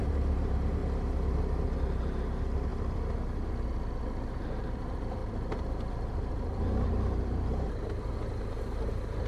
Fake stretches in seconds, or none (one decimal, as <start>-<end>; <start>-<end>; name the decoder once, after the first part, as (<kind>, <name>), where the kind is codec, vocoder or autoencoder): 0.0-0.8 (vocoder, BigVGAN v2); 2.0-2.7; 4.0-9.3